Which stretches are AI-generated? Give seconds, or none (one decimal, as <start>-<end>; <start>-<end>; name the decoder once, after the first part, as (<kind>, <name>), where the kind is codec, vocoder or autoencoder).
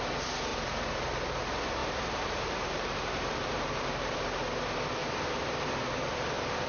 0.5-1.4 (vocoder, BigVGAN v2); 1.8-4.3; 5.0-6.7